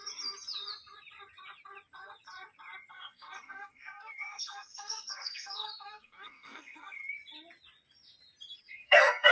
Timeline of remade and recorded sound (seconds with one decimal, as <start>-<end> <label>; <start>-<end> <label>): 0.0-2.9 recorded; 2.9-7.0 remade; 7.0-8.6 recorded; 8.6-9.3 remade